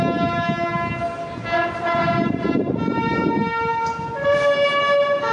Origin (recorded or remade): recorded